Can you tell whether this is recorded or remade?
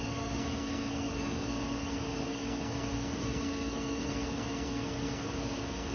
remade